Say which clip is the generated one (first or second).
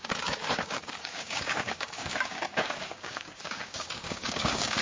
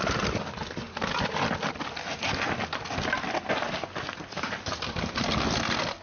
first